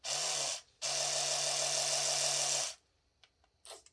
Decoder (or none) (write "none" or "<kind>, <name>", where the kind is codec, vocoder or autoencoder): none